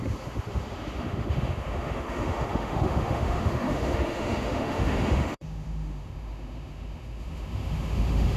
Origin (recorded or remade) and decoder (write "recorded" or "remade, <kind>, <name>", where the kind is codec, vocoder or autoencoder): remade, autoencoder, DAC-VAE